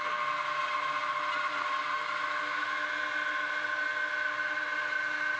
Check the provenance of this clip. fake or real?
real